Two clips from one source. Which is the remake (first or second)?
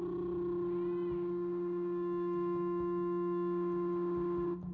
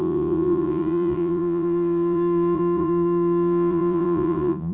second